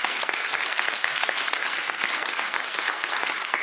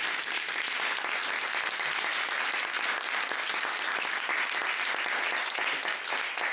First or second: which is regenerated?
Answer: first